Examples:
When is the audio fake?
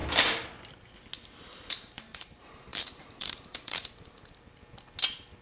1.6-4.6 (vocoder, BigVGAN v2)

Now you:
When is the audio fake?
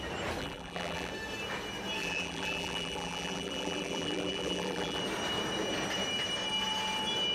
0.4-1.1 (vocoder, BigVGAN v2); 2.0-5.0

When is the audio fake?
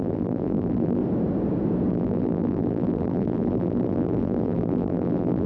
0.0-1.0 (vocoder, BigVGAN v2); 1.9-5.5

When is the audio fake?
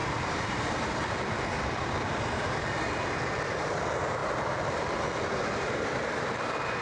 0.0-6.8 (vocoder, BigVGAN v2)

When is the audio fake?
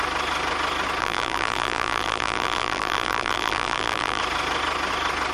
1.0-4.2 (vocoder, BigVGAN v2)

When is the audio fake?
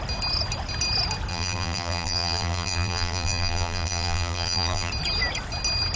1.3-4.9 (vocoder, BigVGAN v2)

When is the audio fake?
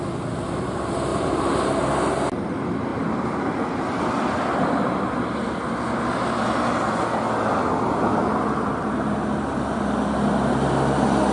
1.1-1.7 (vocoder, BigVGAN v2); 2.9-5.6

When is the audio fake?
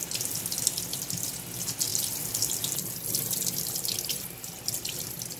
none